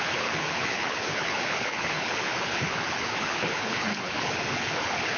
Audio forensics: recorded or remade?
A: remade